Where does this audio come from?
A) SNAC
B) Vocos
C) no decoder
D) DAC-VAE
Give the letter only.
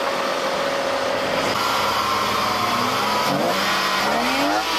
C